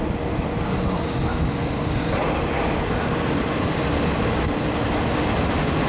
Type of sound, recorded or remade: recorded